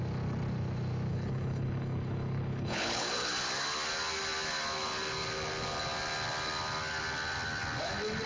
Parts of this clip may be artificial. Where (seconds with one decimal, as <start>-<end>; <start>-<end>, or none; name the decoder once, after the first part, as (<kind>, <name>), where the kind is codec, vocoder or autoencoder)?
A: 1.1-3.3 (codec, HILCodec)